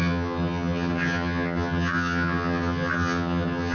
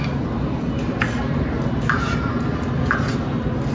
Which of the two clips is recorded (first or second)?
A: second